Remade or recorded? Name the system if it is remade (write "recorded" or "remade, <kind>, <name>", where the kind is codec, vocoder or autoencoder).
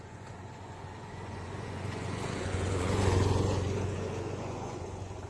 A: remade, vocoder, Vocos